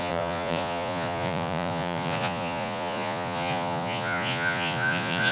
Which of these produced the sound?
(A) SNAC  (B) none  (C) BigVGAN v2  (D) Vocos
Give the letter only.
D